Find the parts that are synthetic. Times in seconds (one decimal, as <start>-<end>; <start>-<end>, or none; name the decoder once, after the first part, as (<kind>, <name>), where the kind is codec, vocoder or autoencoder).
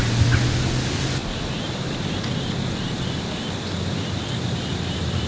none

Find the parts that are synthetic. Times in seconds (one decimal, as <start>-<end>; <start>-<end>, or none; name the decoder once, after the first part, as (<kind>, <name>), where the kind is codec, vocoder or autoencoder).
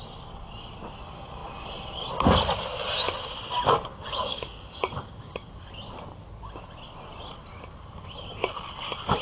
3.9-5.5 (codec, DAC)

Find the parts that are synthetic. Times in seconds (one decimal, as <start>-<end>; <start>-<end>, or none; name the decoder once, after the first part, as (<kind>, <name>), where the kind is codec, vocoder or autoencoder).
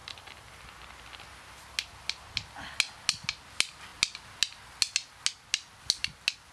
none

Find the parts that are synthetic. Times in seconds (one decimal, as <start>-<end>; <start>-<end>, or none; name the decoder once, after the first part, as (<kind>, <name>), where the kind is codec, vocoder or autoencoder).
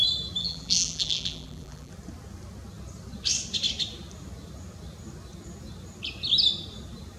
0.4-1.9 (vocoder, BigVGAN v2)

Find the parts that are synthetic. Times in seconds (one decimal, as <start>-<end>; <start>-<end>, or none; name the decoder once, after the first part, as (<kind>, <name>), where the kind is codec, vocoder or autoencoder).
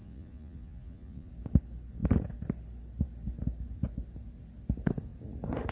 0.0-1.3 (vocoder, Vocos)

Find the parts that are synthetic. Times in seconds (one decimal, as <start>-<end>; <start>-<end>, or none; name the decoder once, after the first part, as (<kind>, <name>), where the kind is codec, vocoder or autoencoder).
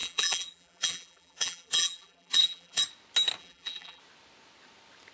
0.0-2.8 (vocoder, BigVGAN v2); 3.4-4.0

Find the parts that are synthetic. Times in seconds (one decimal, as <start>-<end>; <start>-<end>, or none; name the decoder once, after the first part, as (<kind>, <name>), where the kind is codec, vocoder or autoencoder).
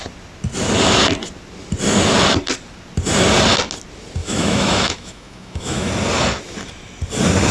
4.2-5.9 (autoencoder, DAC-VAE)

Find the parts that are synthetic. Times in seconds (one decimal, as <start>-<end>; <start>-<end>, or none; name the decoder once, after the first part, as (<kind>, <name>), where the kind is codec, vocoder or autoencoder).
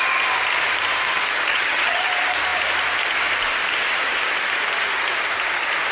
1.5-2.1 (vocoder, HiFi-GAN)